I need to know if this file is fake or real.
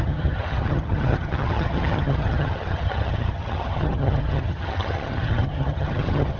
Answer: fake